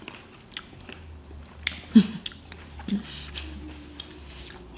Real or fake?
real